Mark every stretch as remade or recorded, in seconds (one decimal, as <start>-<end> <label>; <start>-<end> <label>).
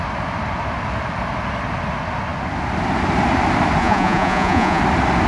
0.0-3.8 recorded; 3.8-4.8 remade; 4.8-5.3 recorded